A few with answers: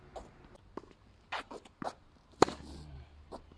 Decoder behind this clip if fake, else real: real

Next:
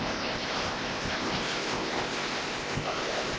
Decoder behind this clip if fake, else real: fake, codec, ZipCodec